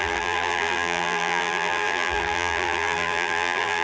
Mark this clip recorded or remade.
remade